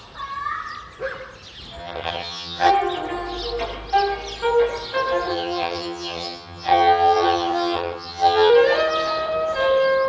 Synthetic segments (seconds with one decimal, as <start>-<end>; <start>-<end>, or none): 1.8-2.7; 5.3-8.5